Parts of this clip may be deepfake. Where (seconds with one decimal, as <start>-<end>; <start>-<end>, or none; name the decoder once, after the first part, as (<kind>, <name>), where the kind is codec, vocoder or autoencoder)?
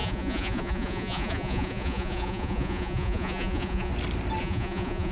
0.0-3.9 (vocoder, Vocos); 4.4-5.1